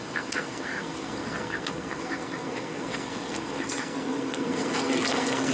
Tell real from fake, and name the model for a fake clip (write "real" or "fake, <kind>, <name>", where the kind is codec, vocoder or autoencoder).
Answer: fake, codec, SNAC